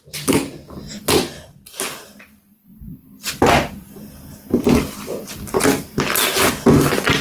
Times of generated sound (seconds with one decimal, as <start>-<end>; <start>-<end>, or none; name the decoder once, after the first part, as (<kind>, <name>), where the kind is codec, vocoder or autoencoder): none